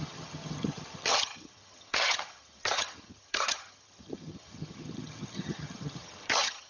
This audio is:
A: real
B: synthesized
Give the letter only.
B